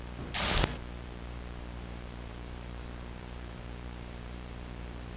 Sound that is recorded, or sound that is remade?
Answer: remade